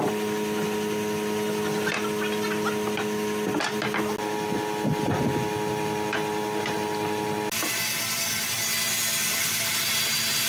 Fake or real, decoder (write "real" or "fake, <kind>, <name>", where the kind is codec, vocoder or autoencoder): real